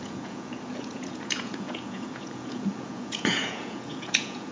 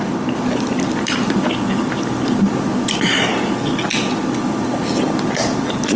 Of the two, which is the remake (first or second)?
first